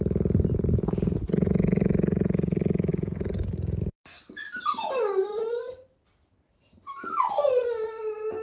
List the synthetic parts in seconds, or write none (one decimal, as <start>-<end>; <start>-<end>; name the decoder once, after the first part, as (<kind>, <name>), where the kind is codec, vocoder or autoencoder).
2.9-3.8 (vocoder, BigVGAN v2)